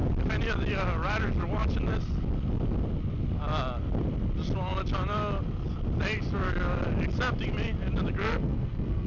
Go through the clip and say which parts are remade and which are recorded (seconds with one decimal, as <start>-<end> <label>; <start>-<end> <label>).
0.0-8.2 recorded; 8.2-9.1 remade